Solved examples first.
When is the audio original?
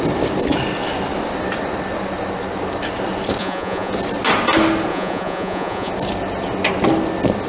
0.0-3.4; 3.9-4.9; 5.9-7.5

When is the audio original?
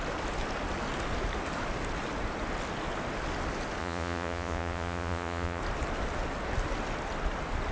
0.0-3.8; 5.6-7.7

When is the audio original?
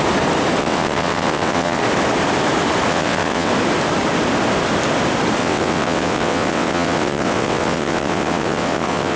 0.0-0.6; 1.8-2.9; 3.5-5.4